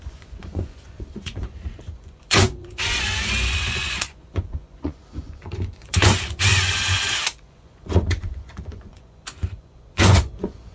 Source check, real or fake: fake